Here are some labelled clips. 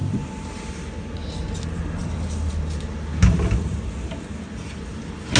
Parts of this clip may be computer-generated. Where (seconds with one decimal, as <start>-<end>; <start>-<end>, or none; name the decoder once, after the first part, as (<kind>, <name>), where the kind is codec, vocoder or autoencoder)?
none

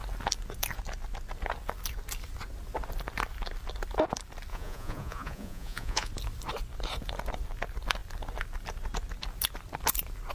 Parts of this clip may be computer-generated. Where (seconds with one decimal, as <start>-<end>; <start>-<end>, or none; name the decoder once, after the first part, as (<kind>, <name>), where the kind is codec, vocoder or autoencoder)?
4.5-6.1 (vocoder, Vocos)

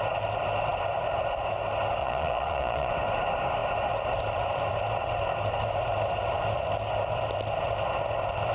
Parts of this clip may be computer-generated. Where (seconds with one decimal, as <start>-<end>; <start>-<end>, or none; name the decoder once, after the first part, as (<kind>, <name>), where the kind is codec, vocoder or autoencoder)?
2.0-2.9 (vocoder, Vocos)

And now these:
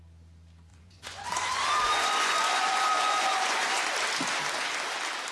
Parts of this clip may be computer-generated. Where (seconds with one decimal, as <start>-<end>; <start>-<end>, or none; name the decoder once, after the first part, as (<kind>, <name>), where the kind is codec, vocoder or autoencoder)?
0.7-3.8 (vocoder, Vocos)